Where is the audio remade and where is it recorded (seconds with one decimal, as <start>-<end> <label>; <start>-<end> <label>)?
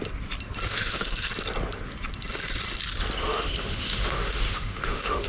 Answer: 0.0-0.7 recorded; 0.7-1.3 remade; 1.3-3.2 recorded; 3.2-5.3 remade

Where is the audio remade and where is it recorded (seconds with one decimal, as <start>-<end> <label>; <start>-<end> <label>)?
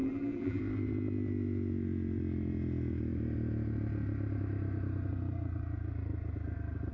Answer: 0.0-0.6 remade; 0.6-6.9 recorded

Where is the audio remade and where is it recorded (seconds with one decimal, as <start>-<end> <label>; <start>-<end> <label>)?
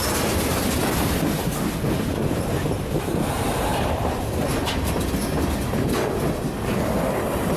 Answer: 0.0-3.7 recorded; 3.7-4.3 remade; 4.3-7.6 recorded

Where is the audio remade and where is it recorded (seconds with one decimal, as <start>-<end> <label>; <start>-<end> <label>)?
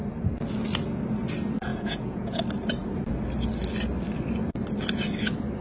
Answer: 0.0-1.7 recorded; 1.7-2.4 remade; 2.4-5.6 recorded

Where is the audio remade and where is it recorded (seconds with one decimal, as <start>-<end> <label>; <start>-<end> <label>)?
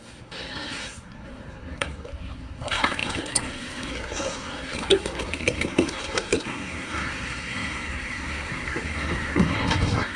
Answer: 0.0-10.2 remade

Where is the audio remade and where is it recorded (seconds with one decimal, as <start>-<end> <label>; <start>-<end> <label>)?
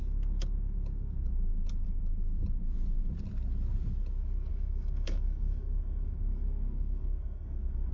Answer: 0.0-4.5 recorded; 4.5-7.9 remade